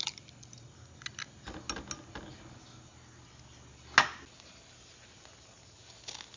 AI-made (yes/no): no